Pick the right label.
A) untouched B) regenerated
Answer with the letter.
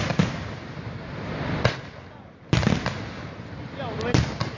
A